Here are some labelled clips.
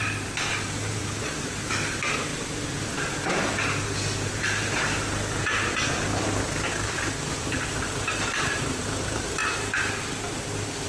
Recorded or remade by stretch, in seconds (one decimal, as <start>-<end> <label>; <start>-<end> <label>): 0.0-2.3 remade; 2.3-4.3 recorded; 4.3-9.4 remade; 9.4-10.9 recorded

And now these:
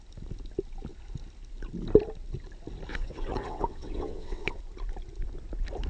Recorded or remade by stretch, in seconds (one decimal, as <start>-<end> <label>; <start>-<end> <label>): 0.0-2.9 recorded; 2.9-4.6 remade; 4.6-5.9 recorded

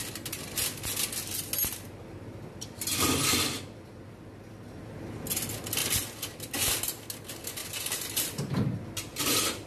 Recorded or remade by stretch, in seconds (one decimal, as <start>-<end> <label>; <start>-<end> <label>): 0.0-9.7 recorded

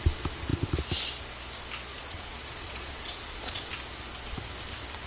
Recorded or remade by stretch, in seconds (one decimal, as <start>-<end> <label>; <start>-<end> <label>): 0.0-1.9 recorded; 1.9-3.6 remade; 3.6-5.1 recorded

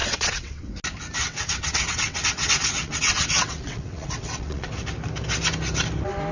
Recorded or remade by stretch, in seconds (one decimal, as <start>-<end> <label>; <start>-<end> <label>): 0.0-0.7 remade; 0.7-1.2 recorded; 1.2-4.7 remade; 4.7-6.3 recorded

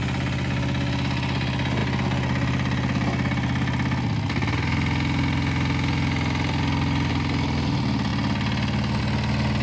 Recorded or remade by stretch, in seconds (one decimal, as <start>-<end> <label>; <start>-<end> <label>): 0.0-9.6 recorded